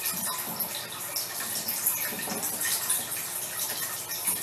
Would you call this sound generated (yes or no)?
no